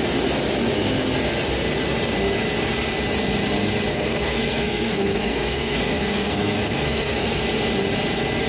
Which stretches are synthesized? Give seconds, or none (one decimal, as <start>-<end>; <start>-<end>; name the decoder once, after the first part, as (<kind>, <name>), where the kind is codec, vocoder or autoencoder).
3.9-7.4 (codec, SNAC)